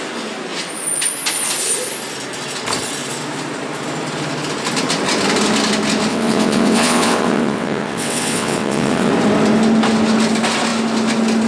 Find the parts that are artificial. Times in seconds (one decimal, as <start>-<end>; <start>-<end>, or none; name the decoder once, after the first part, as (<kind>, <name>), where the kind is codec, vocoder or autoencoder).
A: 6.1-9.1 (vocoder, WaveNeXt)